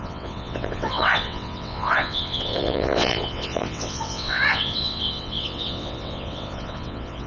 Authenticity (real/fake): fake